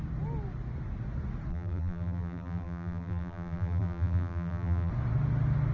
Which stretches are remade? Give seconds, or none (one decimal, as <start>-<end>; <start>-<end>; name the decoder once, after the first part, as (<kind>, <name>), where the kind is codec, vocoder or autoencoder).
1.5-4.9 (vocoder, BigVGAN v2)